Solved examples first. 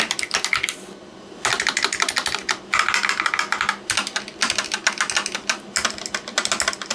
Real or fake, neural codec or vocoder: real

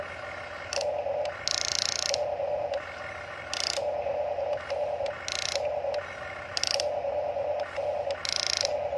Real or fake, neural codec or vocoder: real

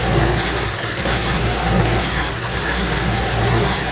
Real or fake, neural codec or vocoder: fake, codec, SNAC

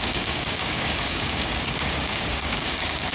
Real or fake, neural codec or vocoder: fake, codec, DAC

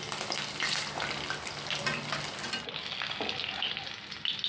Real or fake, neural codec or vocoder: real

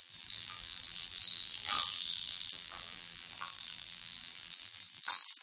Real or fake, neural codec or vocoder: fake, vocoder, BigVGAN v2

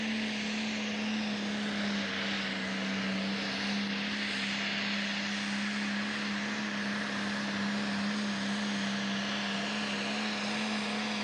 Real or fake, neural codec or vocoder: real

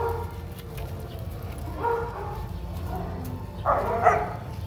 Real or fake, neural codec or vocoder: real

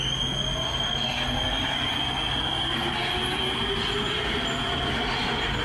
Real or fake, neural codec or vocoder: real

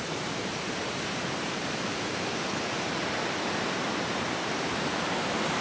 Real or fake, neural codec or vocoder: fake, vocoder, BigVGAN v2